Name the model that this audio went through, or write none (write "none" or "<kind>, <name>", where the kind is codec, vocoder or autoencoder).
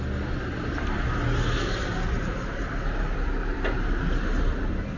none